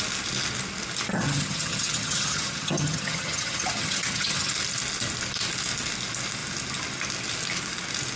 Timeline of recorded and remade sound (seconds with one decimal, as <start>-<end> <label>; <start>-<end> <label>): 0.0-1.1 recorded; 1.1-4.5 remade; 4.5-8.2 recorded